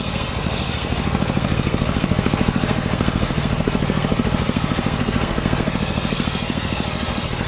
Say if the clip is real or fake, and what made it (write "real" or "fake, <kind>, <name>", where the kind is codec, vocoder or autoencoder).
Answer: fake, codec, SNAC